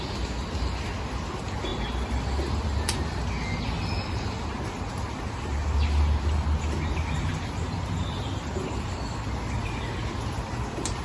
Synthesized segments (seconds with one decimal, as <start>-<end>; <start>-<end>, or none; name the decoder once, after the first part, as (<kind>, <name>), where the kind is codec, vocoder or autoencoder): none